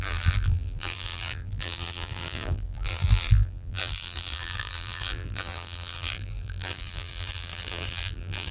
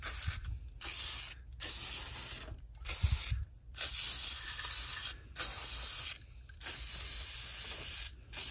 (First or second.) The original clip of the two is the second